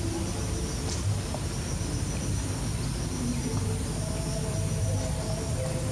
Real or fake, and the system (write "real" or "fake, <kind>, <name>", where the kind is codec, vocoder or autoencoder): real